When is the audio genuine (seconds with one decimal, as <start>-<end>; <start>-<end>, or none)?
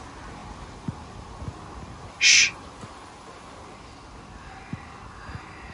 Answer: 0.0-5.7